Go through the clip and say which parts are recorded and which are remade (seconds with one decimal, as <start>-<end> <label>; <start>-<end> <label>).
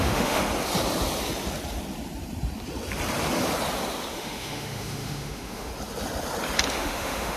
0.0-0.4 remade; 0.4-4.1 recorded; 4.1-5.7 remade; 5.7-6.7 recorded; 6.7-7.4 remade